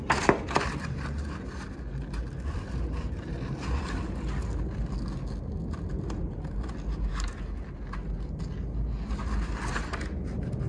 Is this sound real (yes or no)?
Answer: yes